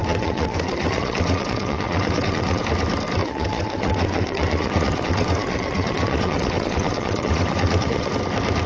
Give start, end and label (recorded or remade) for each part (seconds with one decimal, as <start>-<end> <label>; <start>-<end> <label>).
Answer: 0.0-2.6 remade; 2.6-3.2 recorded; 3.2-8.1 remade; 8.1-8.7 recorded